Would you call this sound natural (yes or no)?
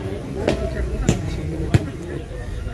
no